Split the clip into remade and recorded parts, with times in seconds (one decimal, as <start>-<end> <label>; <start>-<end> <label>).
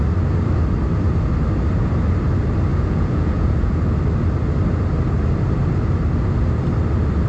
0.0-2.7 recorded; 2.7-3.7 remade; 3.7-7.3 recorded